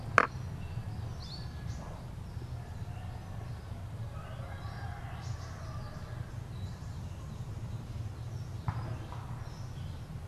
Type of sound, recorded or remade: recorded